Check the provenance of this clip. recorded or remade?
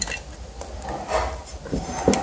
recorded